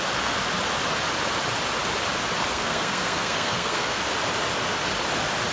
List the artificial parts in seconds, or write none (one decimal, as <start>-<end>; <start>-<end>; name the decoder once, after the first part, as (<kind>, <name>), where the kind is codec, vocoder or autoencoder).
2.5-4.0 (codec, SNAC)